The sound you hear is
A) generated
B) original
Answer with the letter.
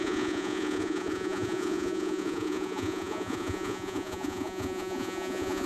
A